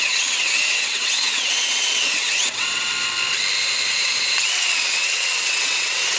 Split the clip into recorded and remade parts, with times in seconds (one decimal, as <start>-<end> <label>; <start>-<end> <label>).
0.0-2.9 remade; 2.9-3.9 recorded; 3.9-6.2 remade